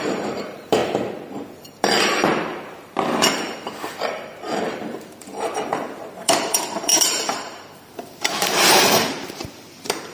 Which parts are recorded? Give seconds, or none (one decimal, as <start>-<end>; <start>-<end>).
0.8-1.3